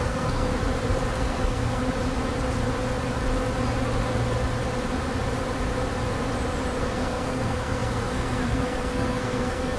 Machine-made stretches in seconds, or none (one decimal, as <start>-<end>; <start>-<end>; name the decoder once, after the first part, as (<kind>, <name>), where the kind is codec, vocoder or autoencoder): 0.0-0.5 (codec, SNAC); 1.1-1.8; 6.8-9.8